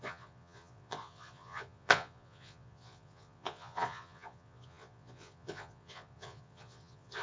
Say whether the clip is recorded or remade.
remade